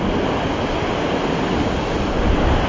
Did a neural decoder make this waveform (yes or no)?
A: no